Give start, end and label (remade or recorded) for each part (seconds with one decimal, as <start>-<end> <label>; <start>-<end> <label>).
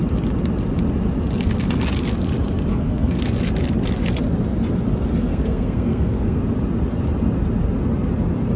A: 0.0-2.7 recorded; 2.7-3.2 remade; 3.2-5.3 recorded; 5.3-6.4 remade; 6.4-8.6 recorded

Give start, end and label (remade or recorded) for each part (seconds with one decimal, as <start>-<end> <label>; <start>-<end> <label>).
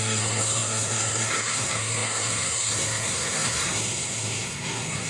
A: 0.0-5.1 remade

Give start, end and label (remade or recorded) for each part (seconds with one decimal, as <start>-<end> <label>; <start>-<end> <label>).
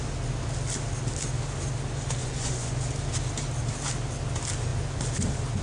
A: 0.0-2.2 recorded; 2.2-2.8 remade; 2.8-5.6 recorded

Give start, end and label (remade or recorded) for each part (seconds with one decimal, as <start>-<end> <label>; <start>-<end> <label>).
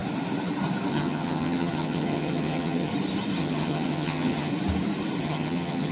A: 0.0-0.9 recorded; 0.9-2.9 remade; 2.9-3.4 recorded; 3.4-4.5 remade; 4.5-5.2 recorded; 5.2-5.9 remade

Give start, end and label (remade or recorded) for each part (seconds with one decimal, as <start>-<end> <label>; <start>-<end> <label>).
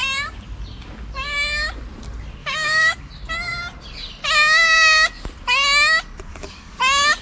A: 0.0-2.4 recorded; 2.4-3.1 remade; 3.1-6.3 recorded; 6.3-6.8 remade; 6.8-7.2 recorded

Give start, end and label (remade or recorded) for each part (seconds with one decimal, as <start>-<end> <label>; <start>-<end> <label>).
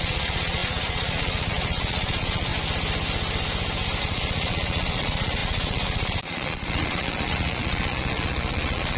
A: 0.0-2.5 remade; 2.5-4.0 recorded; 4.0-9.0 remade